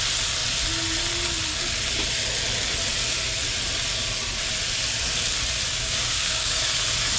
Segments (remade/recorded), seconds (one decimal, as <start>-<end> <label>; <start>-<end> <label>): 0.0-5.7 recorded; 5.7-6.6 remade; 6.6-7.2 recorded